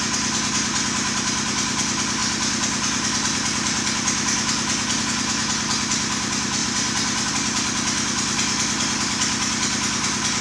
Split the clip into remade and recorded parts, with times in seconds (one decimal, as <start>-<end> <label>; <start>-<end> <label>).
0.0-6.6 recorded; 6.6-7.3 remade; 7.3-10.4 recorded